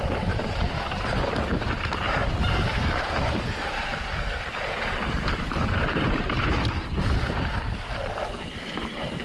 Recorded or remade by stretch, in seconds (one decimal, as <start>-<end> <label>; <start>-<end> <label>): 0.0-2.2 remade; 2.2-3.0 recorded; 3.0-3.9 remade; 3.9-4.6 recorded; 4.6-9.2 remade